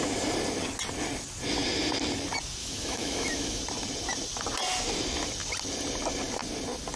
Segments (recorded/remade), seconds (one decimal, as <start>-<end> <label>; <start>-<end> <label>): 0.0-2.6 recorded; 2.6-3.6 remade; 3.6-7.0 recorded

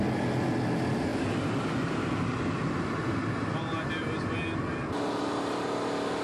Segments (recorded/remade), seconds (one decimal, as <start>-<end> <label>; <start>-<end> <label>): 0.0-6.2 recorded

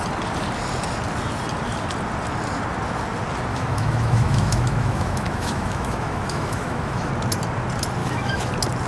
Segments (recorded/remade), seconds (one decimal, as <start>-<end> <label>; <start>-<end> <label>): 0.0-3.5 recorded; 3.5-7.1 remade; 7.1-8.0 recorded; 8.0-8.5 remade; 8.5-8.9 recorded

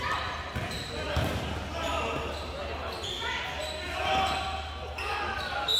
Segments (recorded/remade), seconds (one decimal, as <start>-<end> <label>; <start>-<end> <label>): 0.0-5.8 recorded

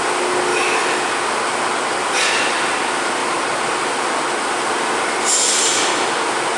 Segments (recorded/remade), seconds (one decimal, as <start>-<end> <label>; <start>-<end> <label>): 0.0-0.5 recorded; 0.5-1.0 remade; 1.0-6.6 recorded

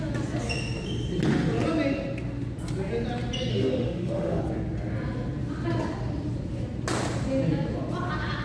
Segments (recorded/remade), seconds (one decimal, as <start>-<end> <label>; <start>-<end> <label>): 0.0-3.5 recorded; 3.5-4.4 remade; 4.4-8.4 recorded

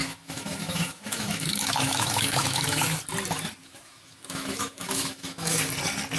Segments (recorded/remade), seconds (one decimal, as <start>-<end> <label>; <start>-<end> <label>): 0.0-3.0 remade; 3.0-3.6 recorded; 3.6-5.6 remade; 5.6-6.2 recorded

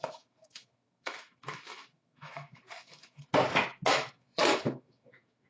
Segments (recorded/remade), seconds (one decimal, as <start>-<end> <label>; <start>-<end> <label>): 0.0-3.3 remade; 3.3-3.9 recorded; 3.9-5.5 remade